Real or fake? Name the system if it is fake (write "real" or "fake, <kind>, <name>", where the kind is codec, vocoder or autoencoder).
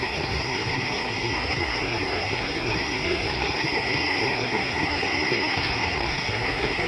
fake, codec, SNAC